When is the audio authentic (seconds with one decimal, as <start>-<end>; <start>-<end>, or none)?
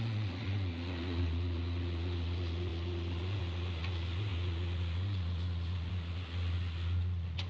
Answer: none